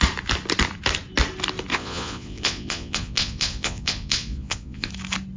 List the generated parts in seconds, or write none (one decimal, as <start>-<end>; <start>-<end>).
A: 1.7-4.9